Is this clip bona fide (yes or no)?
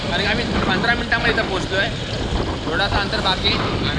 yes